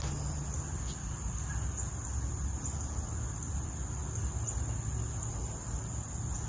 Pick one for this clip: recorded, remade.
recorded